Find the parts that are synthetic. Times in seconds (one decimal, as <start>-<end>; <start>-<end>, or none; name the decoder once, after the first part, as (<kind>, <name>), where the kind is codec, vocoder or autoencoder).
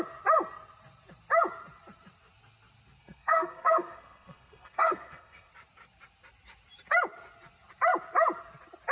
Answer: 3.0-5.5 (codec, SNAC)